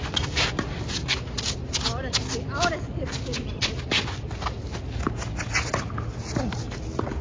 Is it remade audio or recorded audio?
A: recorded